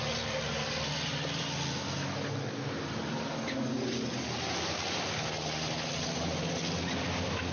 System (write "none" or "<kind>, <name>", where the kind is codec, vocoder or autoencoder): none